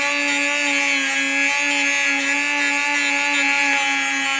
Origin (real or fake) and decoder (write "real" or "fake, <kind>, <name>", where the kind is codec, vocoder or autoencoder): real